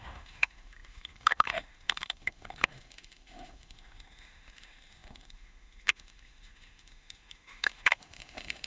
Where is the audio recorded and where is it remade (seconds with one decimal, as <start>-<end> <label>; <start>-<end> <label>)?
0.0-8.7 remade